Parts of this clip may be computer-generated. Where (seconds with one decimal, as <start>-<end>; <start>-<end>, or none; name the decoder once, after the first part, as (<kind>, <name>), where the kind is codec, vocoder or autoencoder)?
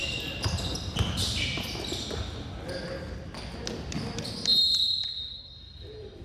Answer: none